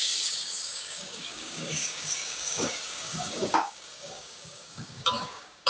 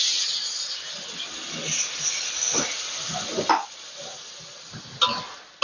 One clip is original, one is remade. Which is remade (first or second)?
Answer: first